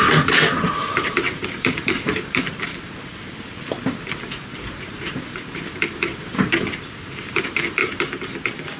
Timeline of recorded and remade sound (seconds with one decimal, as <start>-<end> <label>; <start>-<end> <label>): 0.0-8.8 remade